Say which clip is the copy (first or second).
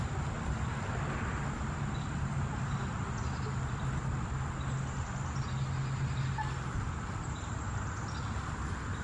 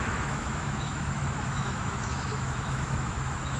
second